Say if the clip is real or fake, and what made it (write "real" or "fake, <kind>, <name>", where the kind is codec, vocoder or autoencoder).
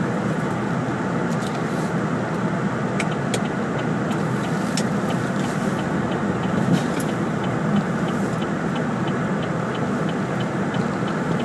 real